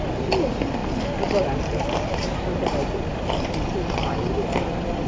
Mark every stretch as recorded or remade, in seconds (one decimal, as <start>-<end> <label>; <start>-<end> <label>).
0.0-5.1 recorded